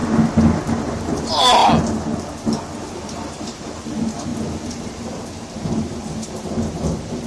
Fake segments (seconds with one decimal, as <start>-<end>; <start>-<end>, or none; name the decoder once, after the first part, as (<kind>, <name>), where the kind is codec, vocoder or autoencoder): 0.8-1.6 (vocoder, BigVGAN v2); 2.9-4.3; 4.8-7.3